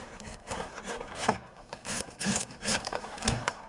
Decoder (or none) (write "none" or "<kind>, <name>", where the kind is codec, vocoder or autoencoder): codec, SNAC